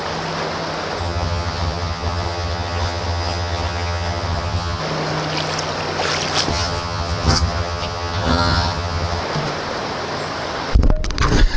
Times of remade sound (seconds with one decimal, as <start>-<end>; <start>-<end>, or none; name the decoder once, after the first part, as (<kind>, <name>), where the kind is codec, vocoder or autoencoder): 1.0-4.8 (vocoder, HiFi-GAN); 6.5-9.2